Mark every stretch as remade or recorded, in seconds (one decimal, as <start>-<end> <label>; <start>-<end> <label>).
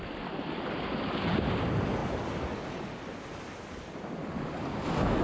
0.0-5.2 recorded